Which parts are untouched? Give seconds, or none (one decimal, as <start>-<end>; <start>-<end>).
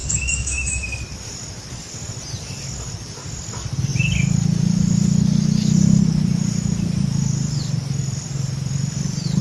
1.0-9.4